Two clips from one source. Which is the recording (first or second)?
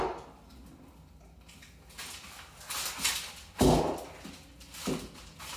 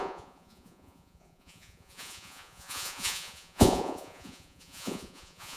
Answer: first